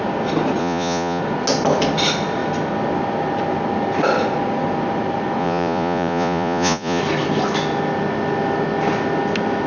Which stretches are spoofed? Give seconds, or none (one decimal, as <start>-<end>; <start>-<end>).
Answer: 0.6-1.2; 5.4-7.0